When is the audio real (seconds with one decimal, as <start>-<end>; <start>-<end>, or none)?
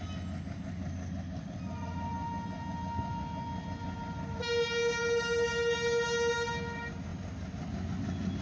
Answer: 0.0-8.4